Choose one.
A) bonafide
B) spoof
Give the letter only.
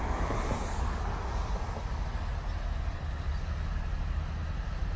A